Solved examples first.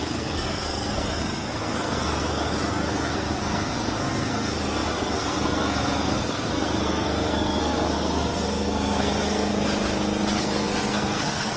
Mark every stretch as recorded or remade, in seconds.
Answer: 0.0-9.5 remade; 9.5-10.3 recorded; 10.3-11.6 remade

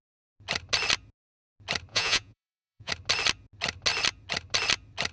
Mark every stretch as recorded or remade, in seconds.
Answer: 0.0-1.9 recorded; 1.9-2.9 remade; 2.9-5.1 recorded

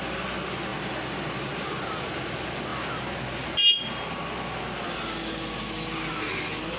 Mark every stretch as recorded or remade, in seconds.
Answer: 0.0-6.8 recorded

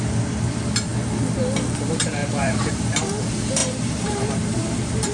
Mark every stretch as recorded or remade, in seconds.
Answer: 0.0-2.2 recorded; 2.2-2.7 remade; 2.7-3.6 recorded; 3.6-5.1 remade